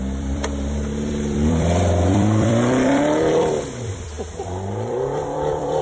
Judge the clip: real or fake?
fake